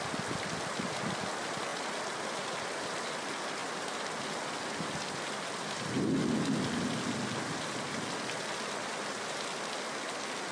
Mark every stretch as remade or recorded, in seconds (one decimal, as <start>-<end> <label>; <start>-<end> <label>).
0.0-10.5 recorded